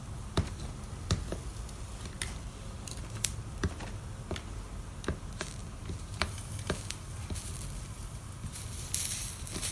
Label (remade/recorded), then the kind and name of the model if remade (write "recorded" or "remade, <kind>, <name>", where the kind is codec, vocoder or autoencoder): recorded